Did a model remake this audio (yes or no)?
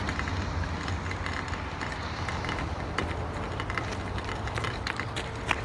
no